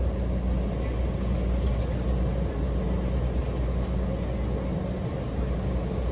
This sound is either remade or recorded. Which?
recorded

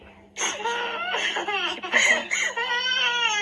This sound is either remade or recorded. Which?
recorded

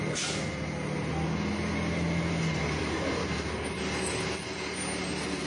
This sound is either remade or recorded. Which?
recorded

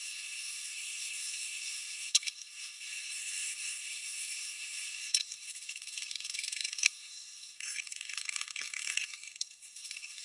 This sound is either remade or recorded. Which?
remade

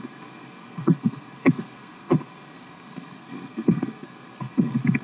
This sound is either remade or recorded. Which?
remade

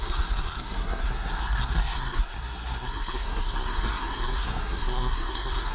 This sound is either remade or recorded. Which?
remade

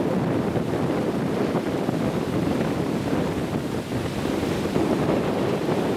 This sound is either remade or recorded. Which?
recorded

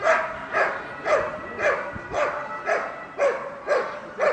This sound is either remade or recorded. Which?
recorded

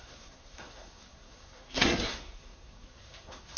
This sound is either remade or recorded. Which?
remade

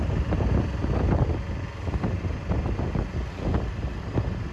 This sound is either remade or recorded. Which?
recorded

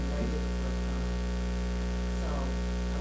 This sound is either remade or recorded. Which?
recorded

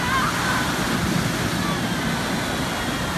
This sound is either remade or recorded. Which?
recorded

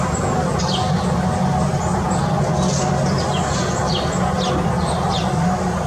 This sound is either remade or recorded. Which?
recorded